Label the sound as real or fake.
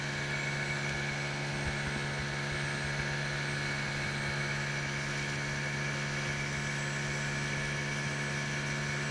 real